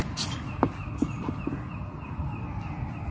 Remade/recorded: recorded